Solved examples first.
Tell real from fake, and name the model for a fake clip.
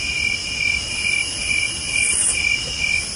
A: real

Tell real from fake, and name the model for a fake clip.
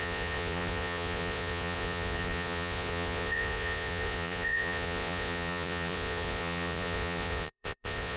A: fake, vocoder, Vocos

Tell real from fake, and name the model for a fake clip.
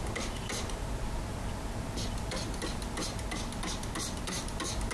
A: real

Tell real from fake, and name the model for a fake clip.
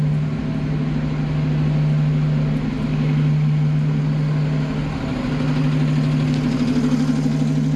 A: real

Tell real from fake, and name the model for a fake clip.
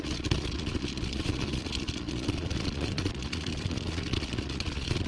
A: fake, vocoder, Vocos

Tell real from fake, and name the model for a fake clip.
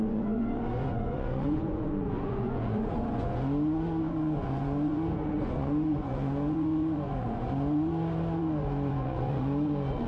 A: fake, vocoder, Vocos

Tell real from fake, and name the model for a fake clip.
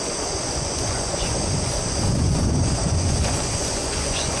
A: fake, vocoder, Vocos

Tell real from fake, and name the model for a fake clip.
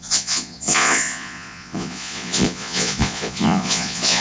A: fake, vocoder, Vocos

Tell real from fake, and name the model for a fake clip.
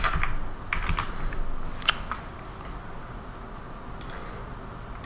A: real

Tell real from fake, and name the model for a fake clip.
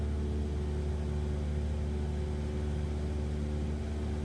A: real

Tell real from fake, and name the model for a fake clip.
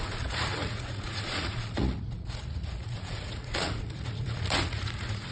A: fake, vocoder, Vocos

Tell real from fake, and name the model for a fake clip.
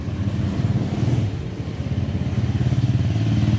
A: real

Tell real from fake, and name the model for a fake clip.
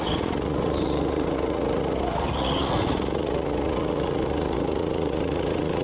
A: fake, vocoder, Vocos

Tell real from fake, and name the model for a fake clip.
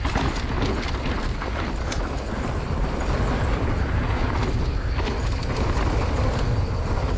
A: real